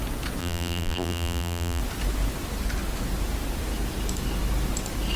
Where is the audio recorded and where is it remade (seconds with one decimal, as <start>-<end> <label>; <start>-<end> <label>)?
0.0-0.4 recorded; 0.4-1.8 remade; 1.8-5.2 recorded